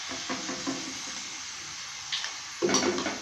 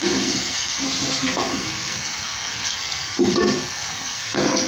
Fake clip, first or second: second